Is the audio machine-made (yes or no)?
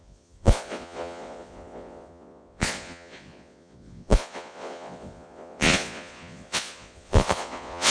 yes